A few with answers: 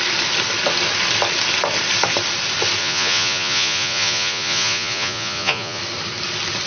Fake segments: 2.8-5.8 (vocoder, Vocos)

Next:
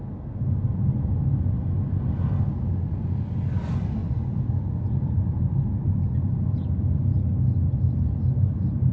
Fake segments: none

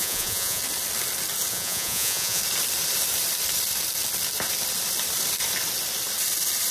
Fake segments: 0.0-0.6 (vocoder, Vocos); 1.5-2.4

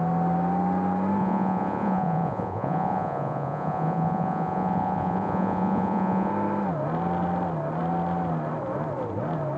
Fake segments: 1.2-6.3 (vocoder, Vocos)

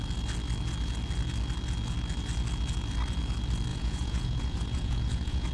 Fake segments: 3.7-5.5 (vocoder, Vocos)